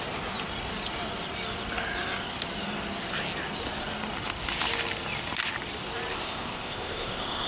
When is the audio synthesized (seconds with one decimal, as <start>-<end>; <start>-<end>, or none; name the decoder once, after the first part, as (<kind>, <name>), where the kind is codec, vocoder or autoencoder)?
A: 6.1-7.5 (codec, ZipCodec)